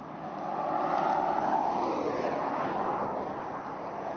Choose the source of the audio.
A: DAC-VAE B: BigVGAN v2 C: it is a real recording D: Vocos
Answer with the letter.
C